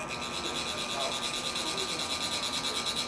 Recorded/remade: recorded